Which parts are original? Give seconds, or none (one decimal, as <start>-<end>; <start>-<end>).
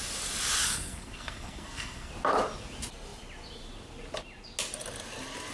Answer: 0.0-0.6; 2.1-5.5